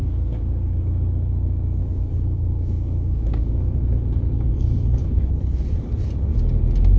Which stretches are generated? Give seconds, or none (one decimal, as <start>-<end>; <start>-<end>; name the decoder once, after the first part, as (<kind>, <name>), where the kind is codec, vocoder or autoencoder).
0.0-0.8 (codec, DAC); 1.8-5.3